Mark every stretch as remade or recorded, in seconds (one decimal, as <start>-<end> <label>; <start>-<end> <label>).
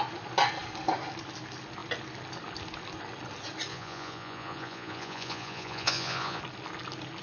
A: 0.0-3.7 recorded; 3.7-6.4 remade; 6.4-7.2 recorded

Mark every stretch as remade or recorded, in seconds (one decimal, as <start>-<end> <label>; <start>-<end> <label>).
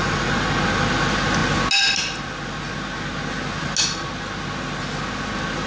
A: 0.0-5.7 recorded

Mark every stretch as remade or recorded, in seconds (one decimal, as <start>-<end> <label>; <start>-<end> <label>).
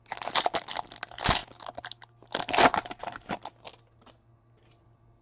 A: 0.0-5.2 recorded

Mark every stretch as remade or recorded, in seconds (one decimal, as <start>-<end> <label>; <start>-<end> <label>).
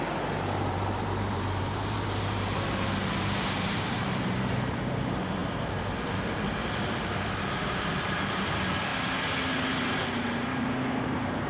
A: 0.0-8.9 remade; 8.9-11.0 recorded; 11.0-11.5 remade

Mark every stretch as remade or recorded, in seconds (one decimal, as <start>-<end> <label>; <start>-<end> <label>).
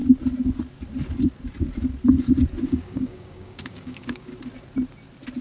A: 0.0-2.7 recorded; 2.7-4.3 remade; 4.3-5.4 recorded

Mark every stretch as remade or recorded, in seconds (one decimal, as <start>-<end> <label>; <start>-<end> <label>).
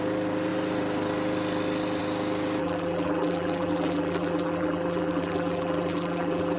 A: 0.0-2.6 recorded; 2.6-6.6 remade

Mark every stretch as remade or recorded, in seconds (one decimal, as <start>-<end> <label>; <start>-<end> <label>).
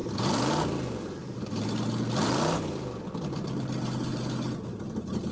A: 0.0-5.3 recorded